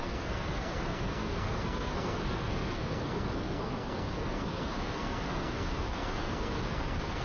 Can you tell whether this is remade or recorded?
remade